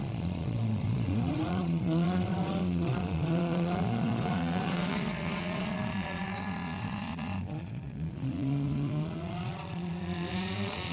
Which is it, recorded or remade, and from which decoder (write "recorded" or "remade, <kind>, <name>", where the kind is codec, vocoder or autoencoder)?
remade, vocoder, Vocos